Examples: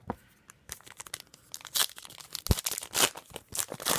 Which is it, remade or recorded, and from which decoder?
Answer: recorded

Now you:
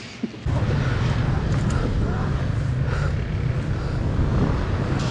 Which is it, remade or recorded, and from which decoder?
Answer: recorded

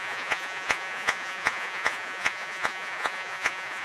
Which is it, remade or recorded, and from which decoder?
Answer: remade, vocoder, Vocos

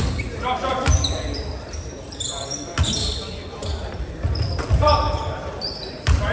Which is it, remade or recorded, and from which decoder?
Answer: remade, vocoder, BigVGAN v2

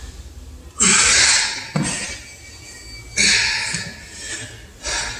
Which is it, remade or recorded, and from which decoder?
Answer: recorded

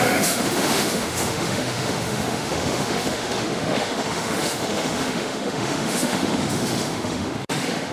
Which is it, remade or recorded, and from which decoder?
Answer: remade, autoencoder, DAC-VAE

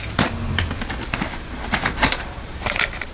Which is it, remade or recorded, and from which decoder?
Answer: remade, vocoder, BigVGAN v2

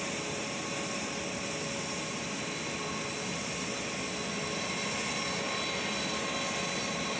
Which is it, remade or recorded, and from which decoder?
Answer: recorded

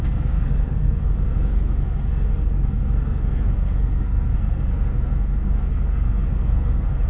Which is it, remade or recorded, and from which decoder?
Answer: remade, codec, SNAC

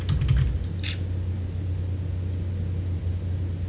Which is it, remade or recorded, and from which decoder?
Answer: recorded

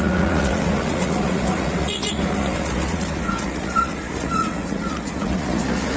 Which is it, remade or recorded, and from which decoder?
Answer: remade, vocoder, Vocos